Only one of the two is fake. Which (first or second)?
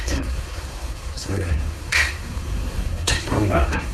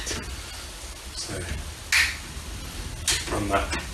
first